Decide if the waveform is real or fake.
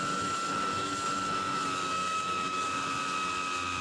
fake